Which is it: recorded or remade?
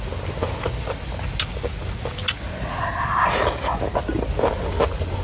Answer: recorded